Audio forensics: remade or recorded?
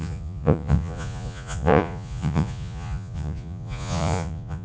remade